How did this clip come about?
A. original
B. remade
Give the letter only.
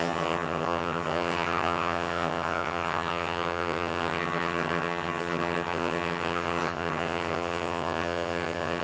B